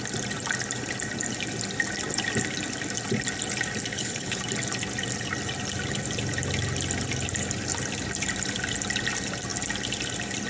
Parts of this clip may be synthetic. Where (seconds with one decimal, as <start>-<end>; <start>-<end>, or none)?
3.9-4.4